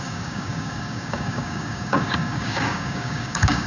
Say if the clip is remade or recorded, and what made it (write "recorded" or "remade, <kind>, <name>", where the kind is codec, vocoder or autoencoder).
remade, codec, DAC